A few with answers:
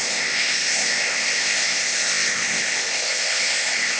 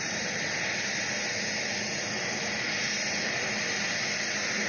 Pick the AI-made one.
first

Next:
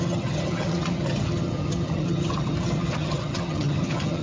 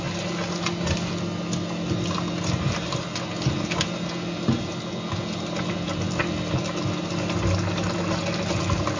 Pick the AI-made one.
first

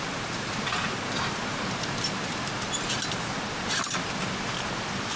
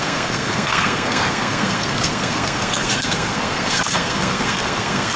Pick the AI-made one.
second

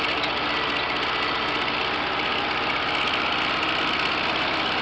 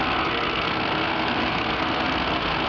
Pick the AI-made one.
second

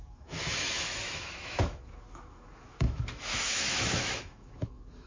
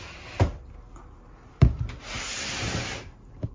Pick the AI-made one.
first